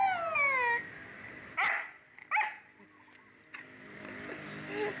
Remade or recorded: recorded